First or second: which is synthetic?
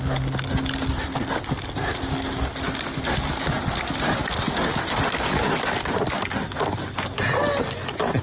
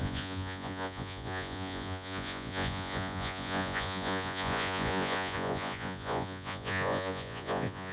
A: second